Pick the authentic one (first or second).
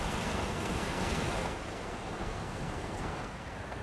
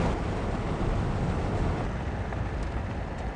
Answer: second